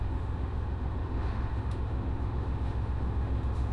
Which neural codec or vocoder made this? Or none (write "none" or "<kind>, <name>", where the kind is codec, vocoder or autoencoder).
autoencoder, DAC-VAE